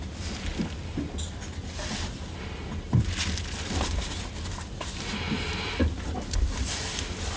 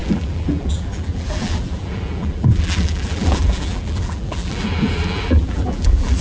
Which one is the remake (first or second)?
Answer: second